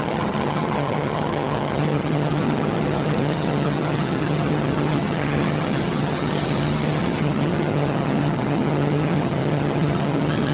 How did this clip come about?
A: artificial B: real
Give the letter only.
A